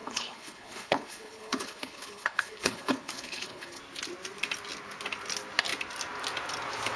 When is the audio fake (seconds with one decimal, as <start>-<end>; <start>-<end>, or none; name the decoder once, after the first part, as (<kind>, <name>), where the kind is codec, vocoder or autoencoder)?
0.0-3.8 (codec, HILCodec)